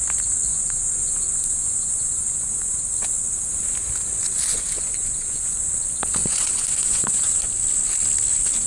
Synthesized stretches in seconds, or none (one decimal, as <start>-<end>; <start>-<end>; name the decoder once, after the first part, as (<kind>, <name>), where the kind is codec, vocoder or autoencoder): 0.5-2.8 (vocoder, Vocos); 4.5-5.7; 6.2-7.3